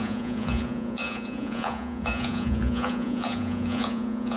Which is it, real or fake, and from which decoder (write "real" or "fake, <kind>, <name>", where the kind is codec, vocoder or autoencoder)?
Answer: fake, vocoder, Vocos